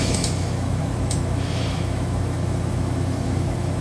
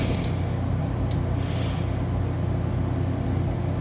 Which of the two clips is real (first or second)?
second